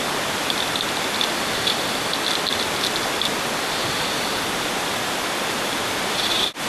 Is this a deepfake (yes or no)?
no